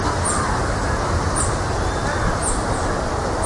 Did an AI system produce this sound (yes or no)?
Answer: no